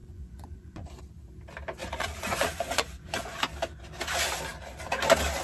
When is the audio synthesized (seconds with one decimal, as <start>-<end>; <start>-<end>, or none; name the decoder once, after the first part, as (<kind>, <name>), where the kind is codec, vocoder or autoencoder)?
0.0-1.0 (vocoder, Vocos); 1.8-3.4